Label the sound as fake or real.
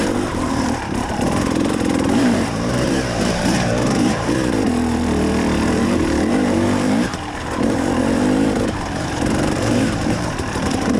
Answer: fake